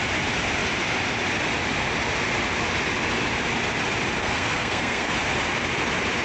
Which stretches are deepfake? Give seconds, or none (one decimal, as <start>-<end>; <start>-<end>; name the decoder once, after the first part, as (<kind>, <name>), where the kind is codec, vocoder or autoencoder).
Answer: 4.2-5.1 (codec, SNAC)